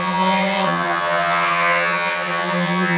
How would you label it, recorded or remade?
remade